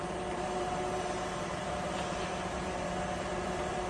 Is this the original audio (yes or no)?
no